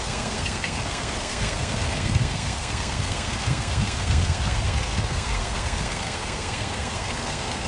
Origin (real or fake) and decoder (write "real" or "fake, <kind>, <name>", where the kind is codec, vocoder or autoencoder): fake, codec, SNAC